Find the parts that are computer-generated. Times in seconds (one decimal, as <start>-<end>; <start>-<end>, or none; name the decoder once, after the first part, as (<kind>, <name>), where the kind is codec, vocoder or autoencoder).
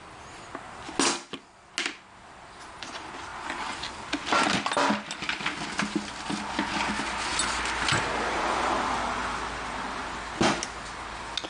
none